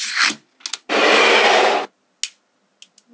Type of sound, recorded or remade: recorded